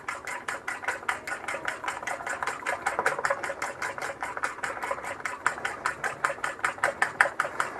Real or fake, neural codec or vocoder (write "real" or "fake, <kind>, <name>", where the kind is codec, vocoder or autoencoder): real